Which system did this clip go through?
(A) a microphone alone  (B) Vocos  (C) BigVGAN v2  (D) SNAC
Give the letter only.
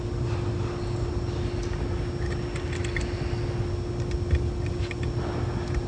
A